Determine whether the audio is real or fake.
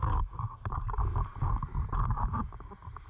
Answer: fake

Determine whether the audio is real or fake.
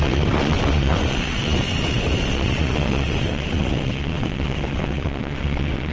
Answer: fake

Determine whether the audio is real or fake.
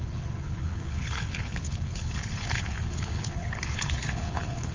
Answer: fake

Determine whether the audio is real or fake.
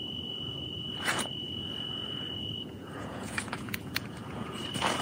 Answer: fake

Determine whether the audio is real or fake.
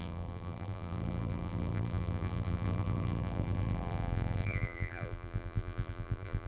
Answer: fake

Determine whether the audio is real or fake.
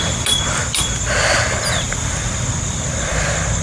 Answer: real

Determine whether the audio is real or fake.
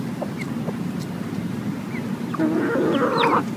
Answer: real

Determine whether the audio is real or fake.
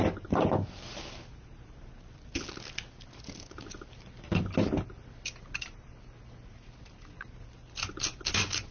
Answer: real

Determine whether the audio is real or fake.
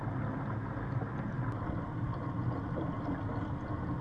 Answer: real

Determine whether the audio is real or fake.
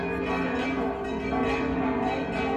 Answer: real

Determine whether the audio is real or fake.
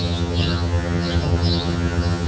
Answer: fake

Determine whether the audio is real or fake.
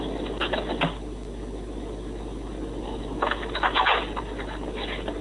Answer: real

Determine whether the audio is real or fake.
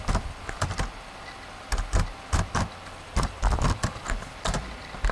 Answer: real